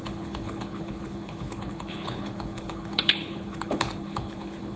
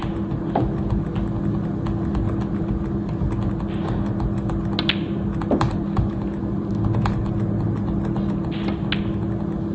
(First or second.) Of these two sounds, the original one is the second